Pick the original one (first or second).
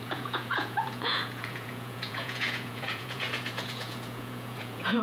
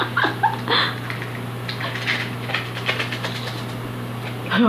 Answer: second